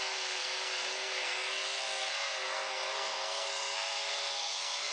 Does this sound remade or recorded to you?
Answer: remade